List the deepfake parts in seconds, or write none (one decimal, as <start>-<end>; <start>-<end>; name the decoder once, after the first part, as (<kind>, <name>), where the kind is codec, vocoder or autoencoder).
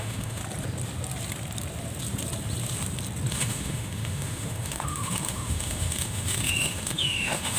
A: 0.0-0.4 (autoencoder, DAC-VAE); 3.3-7.6